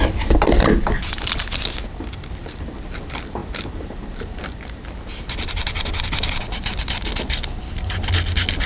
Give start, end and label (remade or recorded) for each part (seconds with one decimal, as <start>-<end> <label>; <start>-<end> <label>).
0.0-8.7 recorded